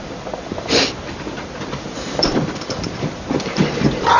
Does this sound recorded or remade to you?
remade